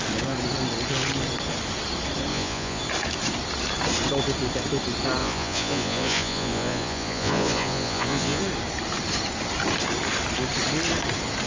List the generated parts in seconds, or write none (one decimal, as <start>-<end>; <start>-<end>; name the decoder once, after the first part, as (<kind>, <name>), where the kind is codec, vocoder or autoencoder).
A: 2.3-2.8 (vocoder, Vocos); 5.2-8.4